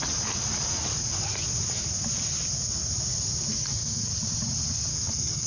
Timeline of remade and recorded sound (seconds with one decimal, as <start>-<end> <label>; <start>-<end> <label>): 0.0-3.5 recorded; 3.5-4.1 remade; 4.1-4.9 recorded; 4.9-5.5 remade